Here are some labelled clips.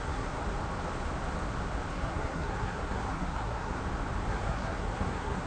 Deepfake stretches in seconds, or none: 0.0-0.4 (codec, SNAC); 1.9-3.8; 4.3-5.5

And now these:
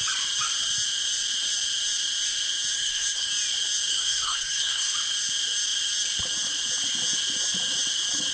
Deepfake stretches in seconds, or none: 2.7-3.3 (codec, SNAC); 3.9-4.9

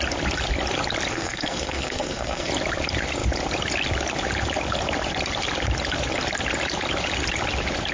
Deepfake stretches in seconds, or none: 1.1-2.5 (codec, SNAC)

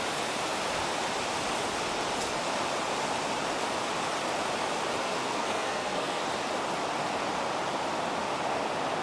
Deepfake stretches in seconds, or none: 5.0-6.2 (codec, SNAC)

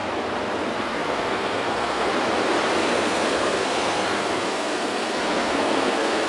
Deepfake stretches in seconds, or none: 0.8-2.1 (codec, SNAC); 2.8-6.3

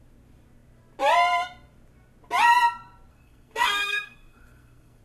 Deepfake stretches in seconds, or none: 3.1-5.0 (codec, SNAC)

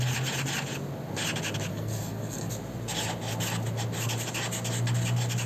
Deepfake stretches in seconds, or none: 1.7-2.5 (codec, SNAC)

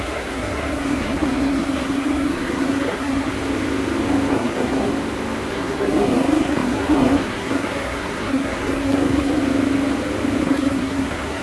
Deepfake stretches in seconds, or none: 0.0-3.3 (codec, SNAC); 4.3-4.9; 5.5-9.4; 10.4-11.4